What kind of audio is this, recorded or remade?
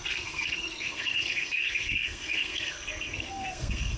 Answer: remade